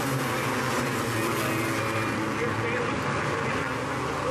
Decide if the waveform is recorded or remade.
recorded